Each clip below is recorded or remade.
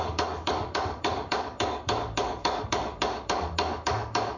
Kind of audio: remade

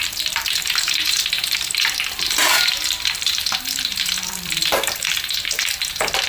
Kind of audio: remade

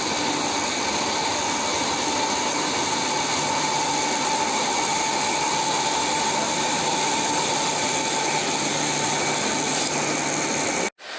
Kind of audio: recorded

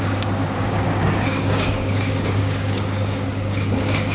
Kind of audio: remade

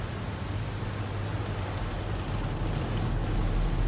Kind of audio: recorded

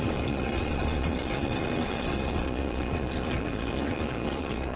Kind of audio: remade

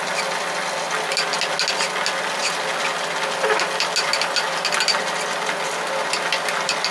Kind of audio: recorded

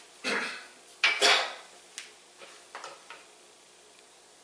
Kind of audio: recorded